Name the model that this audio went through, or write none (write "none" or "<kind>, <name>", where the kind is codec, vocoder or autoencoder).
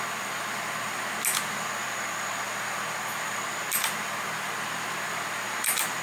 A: none